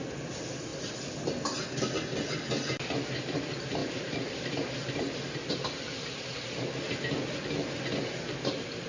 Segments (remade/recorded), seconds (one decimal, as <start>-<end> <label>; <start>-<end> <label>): 0.0-3.8 recorded; 3.8-6.3 remade; 6.3-8.9 recorded

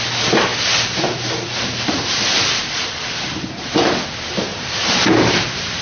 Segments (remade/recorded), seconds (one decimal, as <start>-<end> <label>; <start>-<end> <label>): 0.0-0.5 recorded; 0.5-4.0 remade; 4.0-4.5 recorded; 4.5-5.8 remade

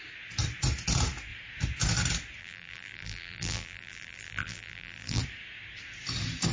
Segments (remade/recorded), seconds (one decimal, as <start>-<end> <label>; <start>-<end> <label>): 0.0-2.4 recorded; 2.4-5.2 remade; 5.2-6.5 recorded